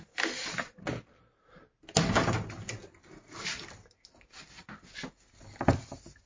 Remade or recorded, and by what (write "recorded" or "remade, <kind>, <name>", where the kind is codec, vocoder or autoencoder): recorded